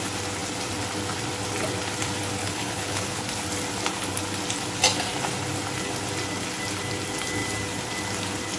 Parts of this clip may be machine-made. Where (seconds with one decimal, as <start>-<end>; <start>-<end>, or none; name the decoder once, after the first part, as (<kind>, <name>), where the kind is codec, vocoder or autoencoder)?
2.4-3.2 (codec, HILCodec)